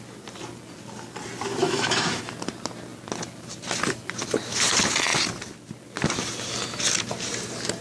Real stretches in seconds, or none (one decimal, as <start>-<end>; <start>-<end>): 0.0-1.6; 2.2-7.8